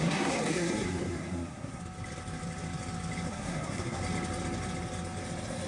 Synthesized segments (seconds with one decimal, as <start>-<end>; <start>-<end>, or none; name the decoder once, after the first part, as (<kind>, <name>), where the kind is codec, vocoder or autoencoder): 0.0-1.8 (codec, SNAC); 3.3-4.0